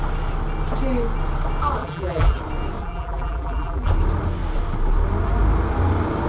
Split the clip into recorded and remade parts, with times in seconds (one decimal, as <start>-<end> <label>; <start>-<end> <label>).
0.0-1.8 recorded; 1.8-2.4 remade; 2.4-2.8 recorded; 2.8-3.9 remade; 3.9-6.3 recorded